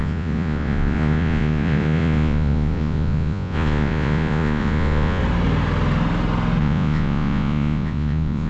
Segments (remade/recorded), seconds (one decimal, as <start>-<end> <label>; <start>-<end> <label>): 0.0-5.2 remade; 5.2-6.6 recorded; 6.6-8.5 remade